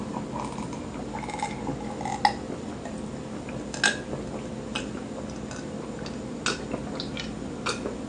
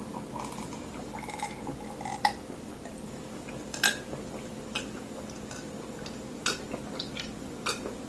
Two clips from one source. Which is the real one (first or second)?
first